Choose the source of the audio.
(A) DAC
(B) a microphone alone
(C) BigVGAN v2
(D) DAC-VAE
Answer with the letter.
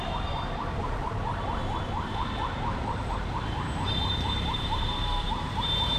C